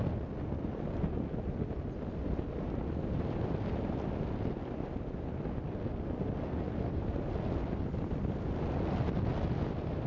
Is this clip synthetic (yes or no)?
no